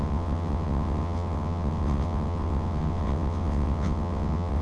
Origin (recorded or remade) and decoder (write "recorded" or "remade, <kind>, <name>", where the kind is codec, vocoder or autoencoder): remade, vocoder, WaveNeXt